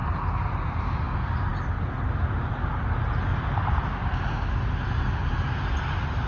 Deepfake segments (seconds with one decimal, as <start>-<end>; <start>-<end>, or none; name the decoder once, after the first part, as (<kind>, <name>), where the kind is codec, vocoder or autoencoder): none